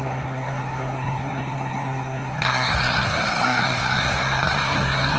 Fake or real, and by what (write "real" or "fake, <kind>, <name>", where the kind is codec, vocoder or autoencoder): fake, codec, SNAC